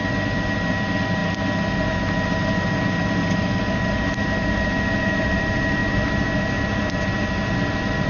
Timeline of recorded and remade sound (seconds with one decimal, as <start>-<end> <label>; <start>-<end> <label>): 0.0-8.1 recorded